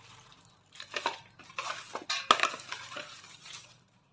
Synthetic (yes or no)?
no